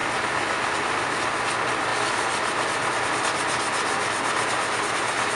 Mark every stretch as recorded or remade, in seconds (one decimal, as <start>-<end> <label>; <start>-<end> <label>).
0.0-5.4 recorded